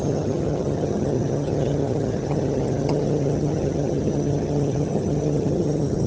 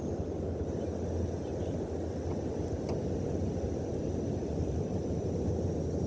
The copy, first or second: first